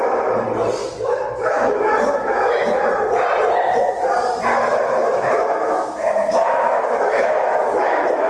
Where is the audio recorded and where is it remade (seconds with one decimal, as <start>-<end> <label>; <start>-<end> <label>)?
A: 0.0-0.8 recorded; 0.8-2.8 remade; 2.8-4.5 recorded; 4.5-8.3 remade